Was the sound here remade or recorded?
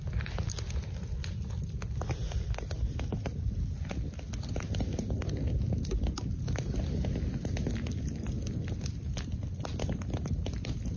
recorded